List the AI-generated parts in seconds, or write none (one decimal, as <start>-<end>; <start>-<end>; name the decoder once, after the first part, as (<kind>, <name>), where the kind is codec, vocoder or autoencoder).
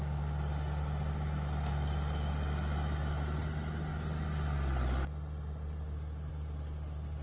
none